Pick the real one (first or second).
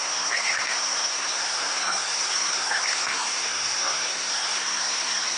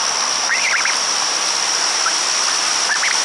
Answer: second